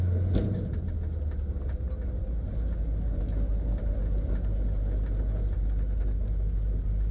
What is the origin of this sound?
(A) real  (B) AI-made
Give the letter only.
A